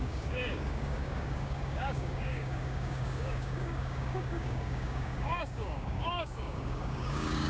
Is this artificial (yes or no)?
yes